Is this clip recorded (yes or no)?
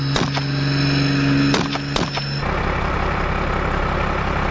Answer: yes